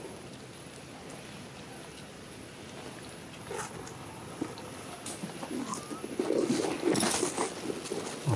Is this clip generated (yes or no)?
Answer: no